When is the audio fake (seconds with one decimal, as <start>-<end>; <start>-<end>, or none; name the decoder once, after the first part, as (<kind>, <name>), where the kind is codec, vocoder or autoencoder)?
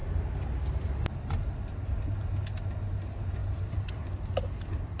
3.4-4.1 (vocoder, BigVGAN v2)